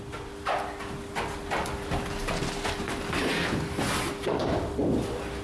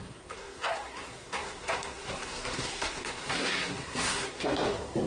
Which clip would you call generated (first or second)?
second